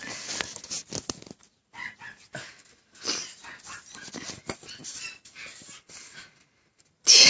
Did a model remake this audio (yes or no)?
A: no